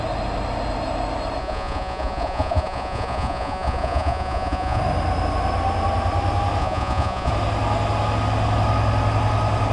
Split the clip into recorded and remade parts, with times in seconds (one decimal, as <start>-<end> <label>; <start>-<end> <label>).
0.0-1.4 recorded; 1.4-4.8 remade; 4.8-6.6 recorded; 6.6-7.3 remade; 7.3-9.7 recorded